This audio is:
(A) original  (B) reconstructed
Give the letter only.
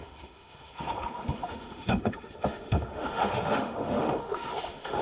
B